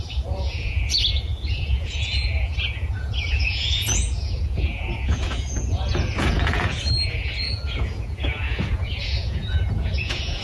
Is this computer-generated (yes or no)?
yes